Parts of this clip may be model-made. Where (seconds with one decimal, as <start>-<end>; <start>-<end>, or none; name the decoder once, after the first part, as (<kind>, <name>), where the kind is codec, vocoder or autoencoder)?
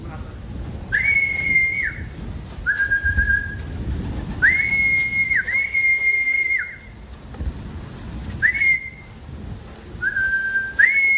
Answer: 4.7-5.6 (autoencoder, DAC-VAE)